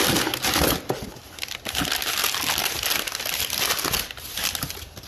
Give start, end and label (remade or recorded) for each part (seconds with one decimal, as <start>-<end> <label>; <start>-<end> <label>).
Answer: 0.0-5.1 recorded